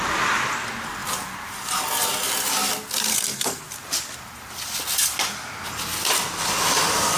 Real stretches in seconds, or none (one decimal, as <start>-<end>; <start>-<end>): 0.0-3.1; 3.6-7.2